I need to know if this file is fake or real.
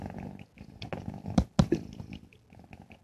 real